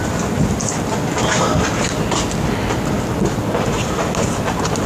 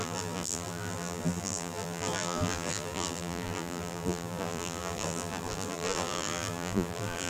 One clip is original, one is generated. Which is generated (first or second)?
second